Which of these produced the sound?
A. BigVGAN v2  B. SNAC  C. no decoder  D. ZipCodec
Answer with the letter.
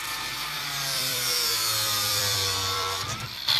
A